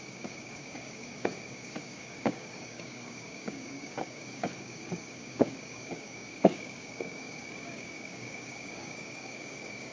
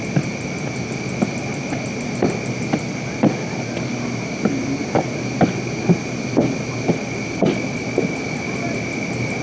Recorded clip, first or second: second